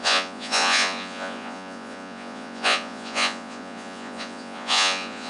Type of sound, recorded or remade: remade